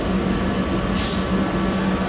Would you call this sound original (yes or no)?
yes